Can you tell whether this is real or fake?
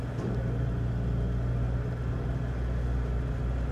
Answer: real